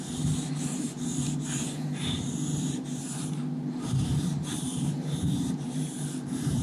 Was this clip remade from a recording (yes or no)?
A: yes